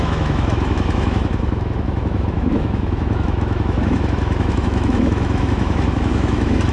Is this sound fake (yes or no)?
yes